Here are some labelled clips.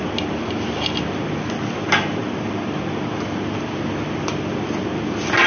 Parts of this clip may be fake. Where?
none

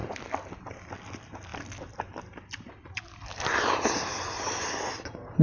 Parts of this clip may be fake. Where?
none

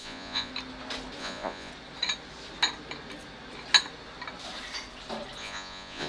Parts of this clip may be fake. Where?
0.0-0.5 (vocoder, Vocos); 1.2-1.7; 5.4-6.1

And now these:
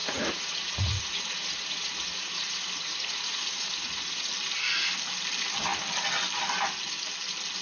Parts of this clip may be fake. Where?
0.0-4.3 (vocoder, Vocos)

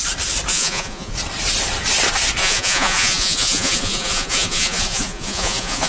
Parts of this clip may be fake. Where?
0.5-1.1 (vocoder, Vocos); 2.4-5.9